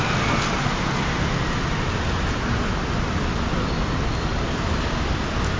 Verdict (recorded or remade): recorded